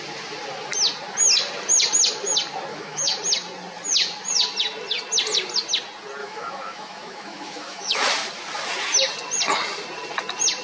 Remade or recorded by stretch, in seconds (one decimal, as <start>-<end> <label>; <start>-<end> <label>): 0.0-2.7 recorded; 2.7-3.2 remade; 3.2-6.2 recorded; 6.2-8.1 remade; 8.1-10.6 recorded